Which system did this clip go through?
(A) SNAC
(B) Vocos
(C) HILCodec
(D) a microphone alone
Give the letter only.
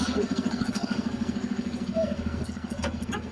A